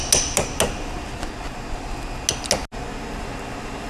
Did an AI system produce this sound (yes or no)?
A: no